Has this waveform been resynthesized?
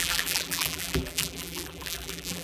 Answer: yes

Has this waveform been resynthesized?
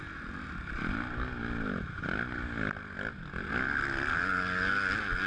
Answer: no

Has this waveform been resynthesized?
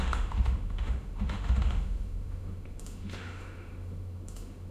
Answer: yes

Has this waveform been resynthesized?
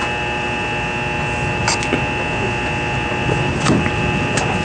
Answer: no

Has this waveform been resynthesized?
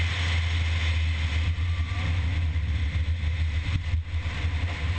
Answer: no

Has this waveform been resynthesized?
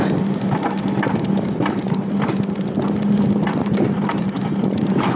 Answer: no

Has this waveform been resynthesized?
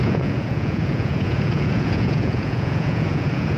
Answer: yes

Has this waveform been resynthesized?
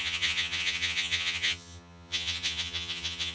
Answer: yes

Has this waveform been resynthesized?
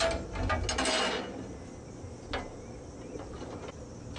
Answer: no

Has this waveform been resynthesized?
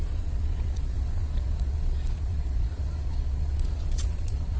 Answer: yes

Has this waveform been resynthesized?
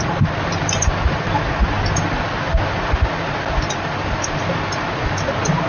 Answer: no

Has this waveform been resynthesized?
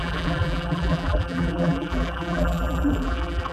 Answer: yes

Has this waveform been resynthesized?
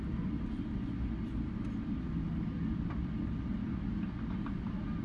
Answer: no